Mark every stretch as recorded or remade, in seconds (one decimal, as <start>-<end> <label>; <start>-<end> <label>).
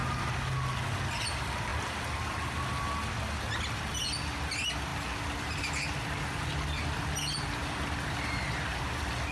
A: 0.0-9.3 recorded